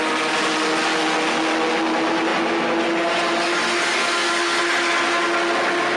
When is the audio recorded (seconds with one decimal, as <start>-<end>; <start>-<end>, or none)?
0.0-6.0